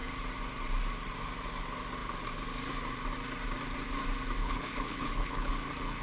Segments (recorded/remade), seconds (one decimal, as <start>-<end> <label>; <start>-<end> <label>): 0.0-4.4 recorded; 4.4-5.5 remade; 5.5-6.0 recorded